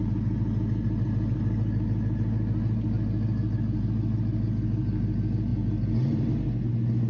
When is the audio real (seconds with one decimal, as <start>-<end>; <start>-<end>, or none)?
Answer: 0.0-7.1